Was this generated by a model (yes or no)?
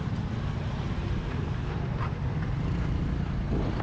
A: no